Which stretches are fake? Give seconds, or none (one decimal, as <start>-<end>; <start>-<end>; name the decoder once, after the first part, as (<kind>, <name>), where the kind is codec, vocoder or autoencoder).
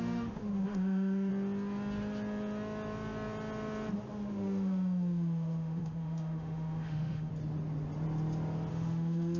0.0-1.3 (autoencoder, DAC-VAE); 4.1-7.3; 8.7-9.4